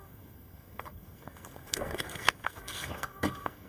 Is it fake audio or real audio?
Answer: fake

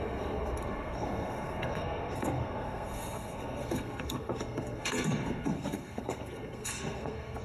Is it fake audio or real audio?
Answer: fake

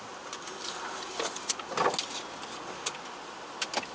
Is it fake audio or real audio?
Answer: real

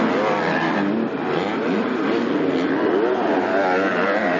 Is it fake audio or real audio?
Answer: real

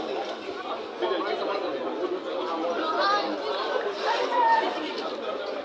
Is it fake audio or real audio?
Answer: real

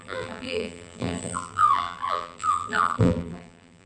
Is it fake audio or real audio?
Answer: fake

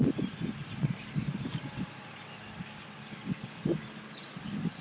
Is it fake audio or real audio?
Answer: real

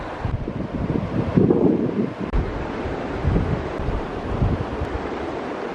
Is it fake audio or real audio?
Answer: fake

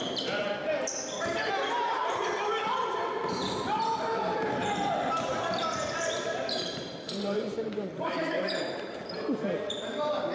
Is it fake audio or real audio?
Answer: fake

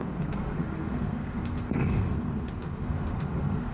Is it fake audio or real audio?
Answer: fake